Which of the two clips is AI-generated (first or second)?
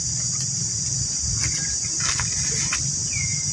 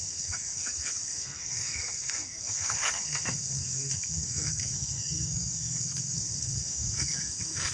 second